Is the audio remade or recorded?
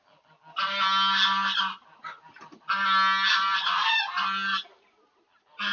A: recorded